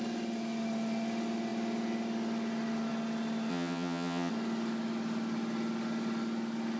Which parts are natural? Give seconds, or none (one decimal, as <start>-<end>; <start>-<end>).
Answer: 0.0-3.5; 4.3-6.8